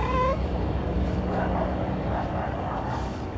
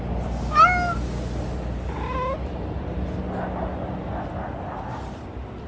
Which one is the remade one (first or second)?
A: first